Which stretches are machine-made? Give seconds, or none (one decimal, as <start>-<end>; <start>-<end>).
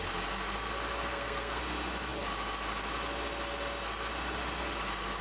1.1-1.6